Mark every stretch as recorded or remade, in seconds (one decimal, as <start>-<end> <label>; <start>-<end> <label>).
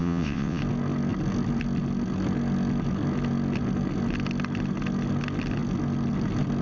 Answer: 0.0-0.6 remade; 0.6-6.6 recorded